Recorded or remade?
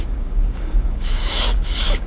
remade